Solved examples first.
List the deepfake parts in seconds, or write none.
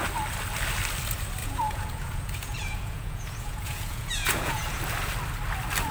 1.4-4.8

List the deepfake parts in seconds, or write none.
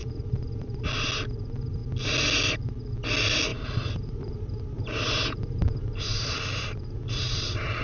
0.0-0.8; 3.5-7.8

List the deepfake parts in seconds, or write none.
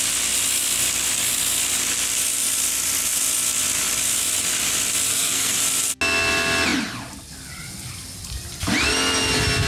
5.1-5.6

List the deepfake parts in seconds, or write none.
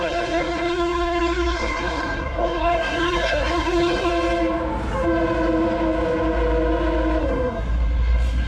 0.0-4.1; 7.2-8.5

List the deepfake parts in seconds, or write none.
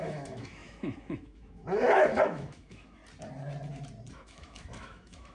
0.0-3.0; 4.1-5.3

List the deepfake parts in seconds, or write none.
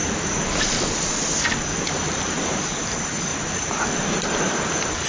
2.0-2.9